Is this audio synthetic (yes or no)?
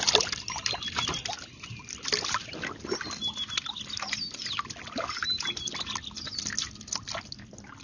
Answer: no